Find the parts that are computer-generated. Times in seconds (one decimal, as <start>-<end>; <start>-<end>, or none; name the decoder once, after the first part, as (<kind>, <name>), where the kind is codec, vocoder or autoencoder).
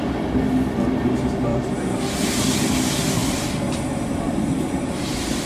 1.5-2.0 (vocoder, BigVGAN v2); 3.2-5.5